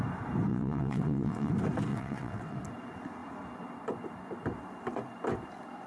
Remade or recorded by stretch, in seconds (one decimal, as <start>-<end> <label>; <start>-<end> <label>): 0.0-0.5 recorded; 0.5-1.5 remade; 1.5-1.9 recorded; 1.9-2.6 remade; 2.6-5.9 recorded